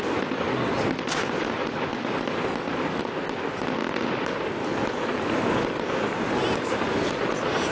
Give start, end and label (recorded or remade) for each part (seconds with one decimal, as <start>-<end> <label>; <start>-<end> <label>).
0.0-7.7 recorded